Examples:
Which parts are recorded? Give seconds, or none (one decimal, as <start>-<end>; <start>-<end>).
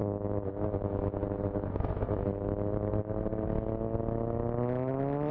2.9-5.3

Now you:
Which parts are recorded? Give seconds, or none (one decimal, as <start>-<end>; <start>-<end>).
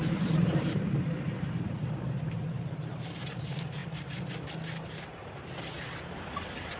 none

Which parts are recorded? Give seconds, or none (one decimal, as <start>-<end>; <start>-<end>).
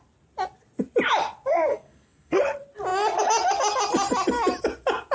0.0-1.7; 2.4-5.1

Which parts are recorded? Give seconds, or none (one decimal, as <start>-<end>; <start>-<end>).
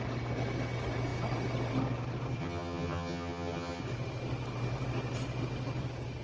0.0-2.4; 3.8-6.2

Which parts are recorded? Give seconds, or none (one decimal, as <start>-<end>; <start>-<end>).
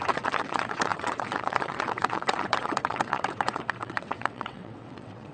none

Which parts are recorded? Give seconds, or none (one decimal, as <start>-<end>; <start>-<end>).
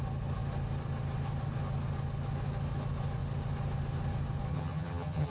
0.0-4.5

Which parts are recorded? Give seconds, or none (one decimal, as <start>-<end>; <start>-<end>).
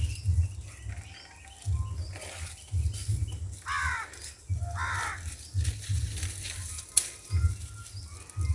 0.0-3.0; 4.5-8.5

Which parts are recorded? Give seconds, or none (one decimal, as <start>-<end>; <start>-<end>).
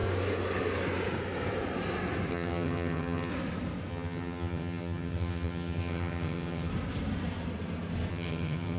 0.0-2.3; 3.3-3.9; 6.7-8.1